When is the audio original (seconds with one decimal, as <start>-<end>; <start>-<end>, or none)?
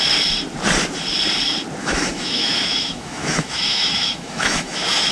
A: 0.0-1.8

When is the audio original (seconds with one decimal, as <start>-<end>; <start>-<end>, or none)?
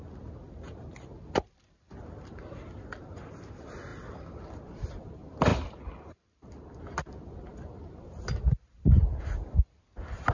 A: 0.0-1.1; 1.9-3.9; 4.9-5.5; 6.8-10.3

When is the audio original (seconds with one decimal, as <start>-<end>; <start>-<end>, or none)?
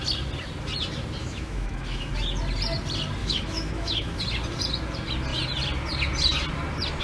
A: 0.0-1.2; 2.1-3.2; 4.2-7.0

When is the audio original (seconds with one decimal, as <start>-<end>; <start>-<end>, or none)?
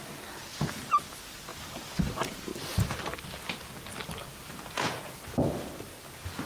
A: 0.0-1.5; 2.1-4.3; 5.0-6.5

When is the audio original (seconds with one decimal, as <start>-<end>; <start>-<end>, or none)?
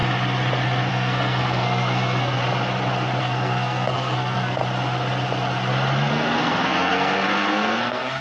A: 0.0-0.9; 2.4-3.2; 4.6-6.1